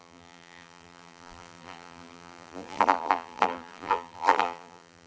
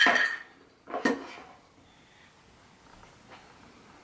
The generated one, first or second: first